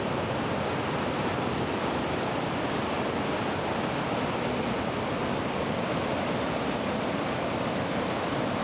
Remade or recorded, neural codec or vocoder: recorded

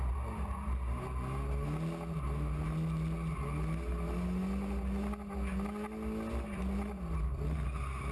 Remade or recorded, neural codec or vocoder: recorded